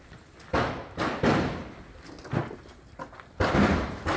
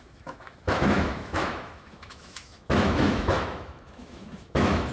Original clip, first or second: first